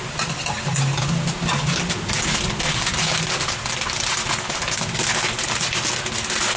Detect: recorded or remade recorded